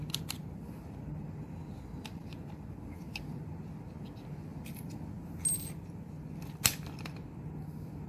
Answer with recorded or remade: recorded